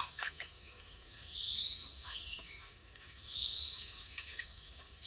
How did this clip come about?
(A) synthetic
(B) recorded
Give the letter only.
A